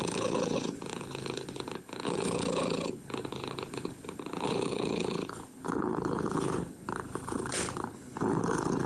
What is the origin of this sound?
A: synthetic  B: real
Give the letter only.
A